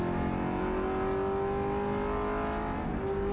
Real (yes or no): yes